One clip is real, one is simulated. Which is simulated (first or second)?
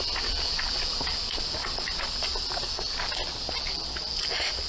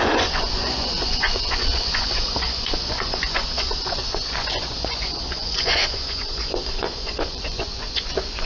second